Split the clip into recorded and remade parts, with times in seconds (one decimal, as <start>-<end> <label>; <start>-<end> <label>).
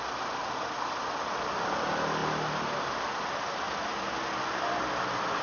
0.0-5.4 recorded